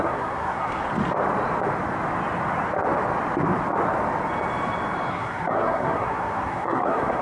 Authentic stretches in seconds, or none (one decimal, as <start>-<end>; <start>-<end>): 0.8-5.1